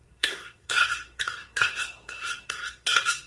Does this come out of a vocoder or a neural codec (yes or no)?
yes